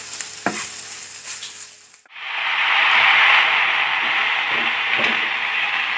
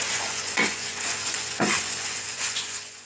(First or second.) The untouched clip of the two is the first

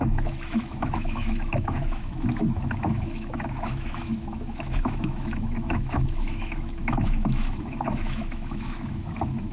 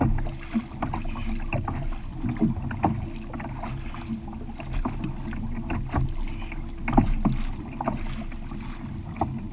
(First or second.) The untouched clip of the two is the second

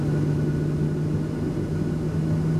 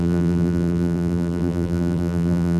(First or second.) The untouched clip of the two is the first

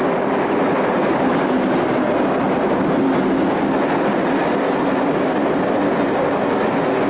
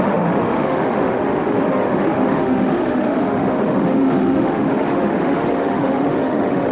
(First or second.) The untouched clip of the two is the first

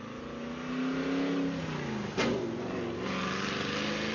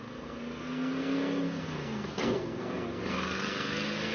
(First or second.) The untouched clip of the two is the first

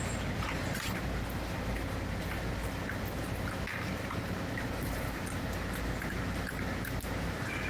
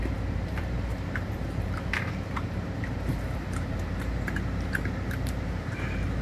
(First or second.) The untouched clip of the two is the first